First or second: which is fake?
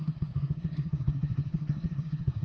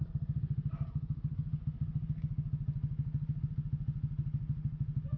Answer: first